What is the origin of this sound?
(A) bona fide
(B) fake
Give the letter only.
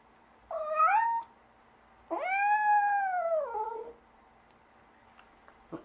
A